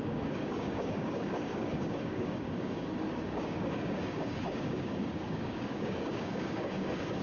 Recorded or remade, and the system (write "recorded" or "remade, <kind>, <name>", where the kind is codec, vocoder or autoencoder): remade, codec, DAC